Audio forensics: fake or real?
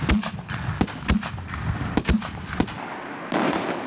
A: real